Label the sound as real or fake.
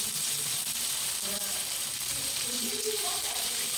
fake